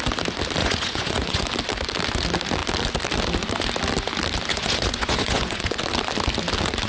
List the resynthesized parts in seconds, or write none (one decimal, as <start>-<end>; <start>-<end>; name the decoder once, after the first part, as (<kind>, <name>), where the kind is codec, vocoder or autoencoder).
0.6-1.4 (vocoder, Vocos); 4.5-5.8